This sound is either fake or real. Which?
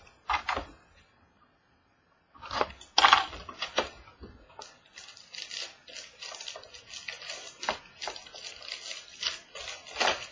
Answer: real